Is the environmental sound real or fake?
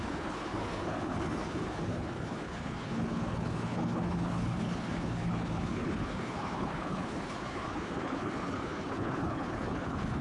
fake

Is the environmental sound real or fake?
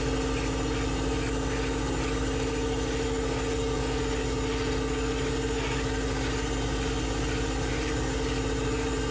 real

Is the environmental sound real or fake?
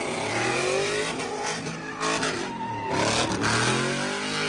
real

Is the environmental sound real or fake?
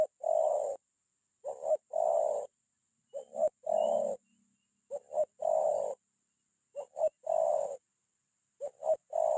real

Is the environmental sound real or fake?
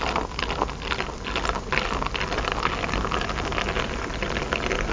real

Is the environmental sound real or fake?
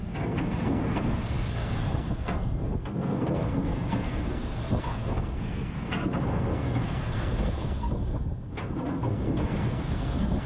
fake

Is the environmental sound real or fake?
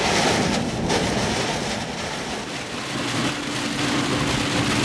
real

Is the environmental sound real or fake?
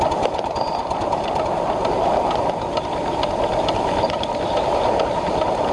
real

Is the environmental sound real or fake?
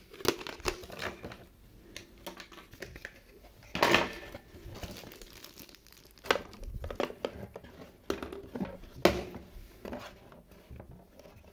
real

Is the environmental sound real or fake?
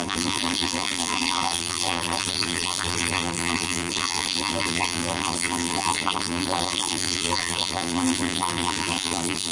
fake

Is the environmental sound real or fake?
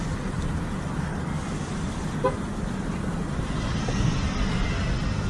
real